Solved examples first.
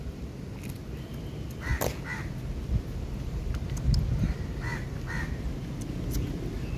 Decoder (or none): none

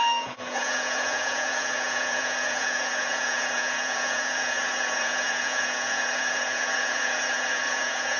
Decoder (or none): vocoder, Vocos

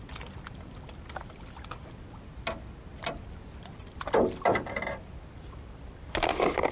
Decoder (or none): none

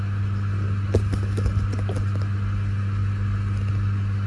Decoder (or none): none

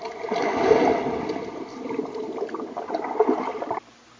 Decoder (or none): none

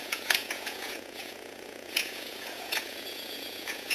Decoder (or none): vocoder, Vocos